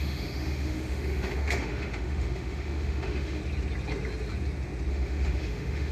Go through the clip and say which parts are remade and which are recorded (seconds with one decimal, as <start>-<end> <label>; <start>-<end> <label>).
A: 0.0-3.4 remade; 3.4-4.9 recorded; 4.9-5.9 remade